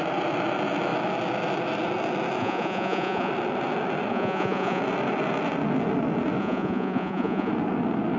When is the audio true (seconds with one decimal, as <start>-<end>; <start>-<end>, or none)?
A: 0.0-2.4; 3.3-4.1; 4.8-6.4; 7.5-8.2